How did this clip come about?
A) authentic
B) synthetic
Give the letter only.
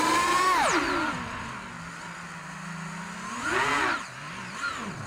A